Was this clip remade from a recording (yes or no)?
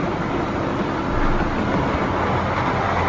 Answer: no